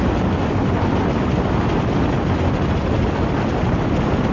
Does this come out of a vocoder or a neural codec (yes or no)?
no